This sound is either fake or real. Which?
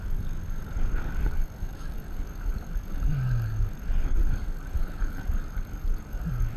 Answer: fake